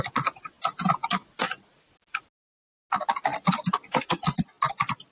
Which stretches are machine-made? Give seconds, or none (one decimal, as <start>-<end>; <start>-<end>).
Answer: none